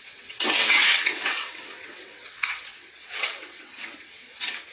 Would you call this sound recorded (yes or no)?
no